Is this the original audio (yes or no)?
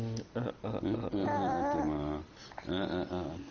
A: yes